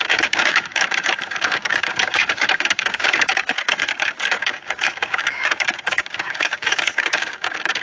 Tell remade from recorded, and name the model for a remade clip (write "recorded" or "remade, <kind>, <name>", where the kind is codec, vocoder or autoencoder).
remade, codec, DAC